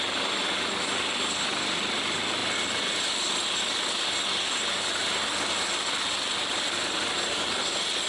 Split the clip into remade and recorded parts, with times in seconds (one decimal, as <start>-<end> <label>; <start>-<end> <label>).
0.0-8.1 recorded